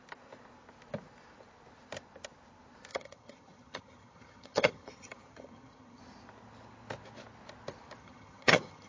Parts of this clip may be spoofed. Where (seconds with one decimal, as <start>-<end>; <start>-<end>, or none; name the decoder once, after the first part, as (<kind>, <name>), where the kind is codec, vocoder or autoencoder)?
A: 2.9-6.0 (vocoder, HiFi-GAN); 8.0-8.9